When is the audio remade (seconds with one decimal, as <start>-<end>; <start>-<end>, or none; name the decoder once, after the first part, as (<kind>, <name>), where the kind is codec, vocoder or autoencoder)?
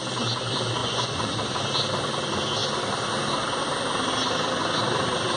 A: 0.8-1.4 (vocoder, Vocos)